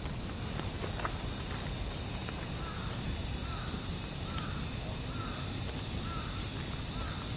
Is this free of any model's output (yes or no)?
yes